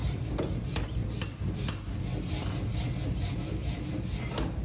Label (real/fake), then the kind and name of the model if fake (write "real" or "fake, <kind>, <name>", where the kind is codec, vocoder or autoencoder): real